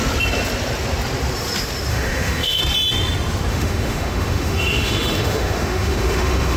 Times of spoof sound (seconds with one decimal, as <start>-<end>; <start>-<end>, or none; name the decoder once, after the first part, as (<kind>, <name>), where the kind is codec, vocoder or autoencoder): 1.9-2.6 (autoencoder, DAC-VAE); 3.5-6.6